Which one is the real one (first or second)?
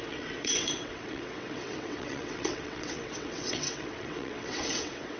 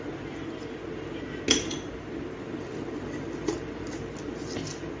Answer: second